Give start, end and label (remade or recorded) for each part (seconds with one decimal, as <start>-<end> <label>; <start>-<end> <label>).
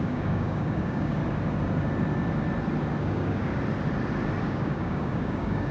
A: 0.0-1.2 remade; 1.2-3.0 recorded; 3.0-3.5 remade; 3.5-4.4 recorded; 4.4-5.7 remade